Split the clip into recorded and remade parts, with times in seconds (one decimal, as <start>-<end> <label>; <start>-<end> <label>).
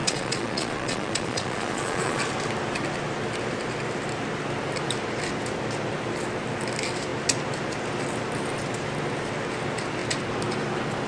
0.0-2.2 remade; 2.2-11.1 recorded